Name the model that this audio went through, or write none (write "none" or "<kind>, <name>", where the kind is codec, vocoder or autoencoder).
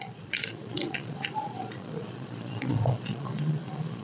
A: vocoder, Vocos